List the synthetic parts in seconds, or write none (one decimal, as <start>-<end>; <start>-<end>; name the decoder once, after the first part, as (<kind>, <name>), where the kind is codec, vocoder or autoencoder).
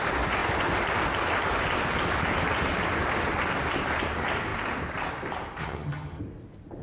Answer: 5.6-6.2 (vocoder, HiFi-GAN)